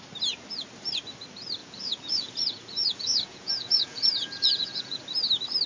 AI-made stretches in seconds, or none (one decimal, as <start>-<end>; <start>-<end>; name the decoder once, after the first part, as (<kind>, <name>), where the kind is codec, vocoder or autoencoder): 1.6-5.0 (vocoder, Vocos)